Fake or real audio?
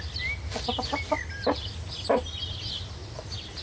real